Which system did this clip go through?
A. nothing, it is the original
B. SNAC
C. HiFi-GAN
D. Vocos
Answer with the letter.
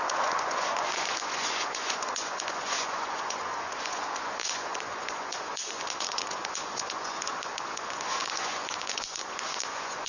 D